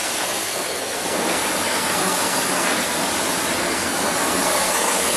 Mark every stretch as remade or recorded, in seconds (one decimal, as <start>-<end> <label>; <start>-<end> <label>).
0.0-3.1 remade; 3.1-3.6 recorded; 3.6-5.2 remade